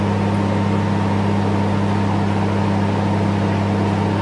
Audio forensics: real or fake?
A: real